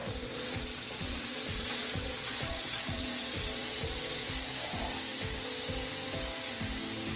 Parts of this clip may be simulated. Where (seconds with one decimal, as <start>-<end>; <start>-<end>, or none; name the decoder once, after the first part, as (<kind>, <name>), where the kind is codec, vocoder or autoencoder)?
0.0-4.3 (vocoder, Vocos)